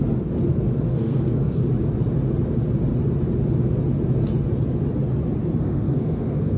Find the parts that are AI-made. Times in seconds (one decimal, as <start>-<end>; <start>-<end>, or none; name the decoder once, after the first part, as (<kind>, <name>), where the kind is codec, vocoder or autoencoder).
0.5-1.6 (codec, SNAC); 5.6-6.6